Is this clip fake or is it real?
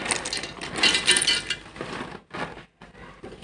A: real